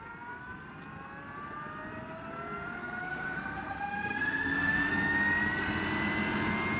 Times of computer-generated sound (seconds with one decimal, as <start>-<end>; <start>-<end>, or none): 2.8-4.9